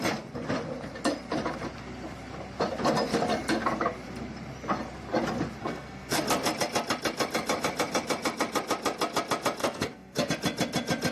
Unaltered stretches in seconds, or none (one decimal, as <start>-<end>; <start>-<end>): 0.0-5.6; 6.2-9.6; 10.3-11.1